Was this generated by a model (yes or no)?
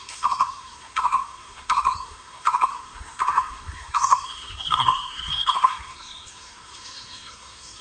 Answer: yes